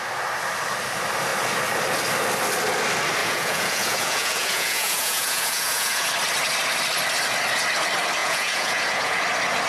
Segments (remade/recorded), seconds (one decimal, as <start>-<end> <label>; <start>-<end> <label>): 0.0-3.2 recorded; 3.2-6.1 remade; 6.1-8.2 recorded; 8.2-9.2 remade; 9.2-9.7 recorded